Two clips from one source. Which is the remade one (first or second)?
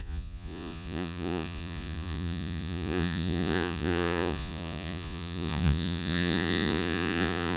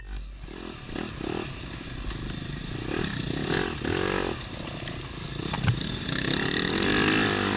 first